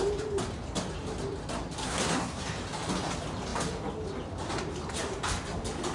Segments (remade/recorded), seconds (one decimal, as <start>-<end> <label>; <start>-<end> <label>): 0.0-1.8 recorded; 1.8-2.4 remade; 2.4-5.9 recorded